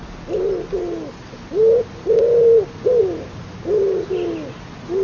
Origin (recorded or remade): recorded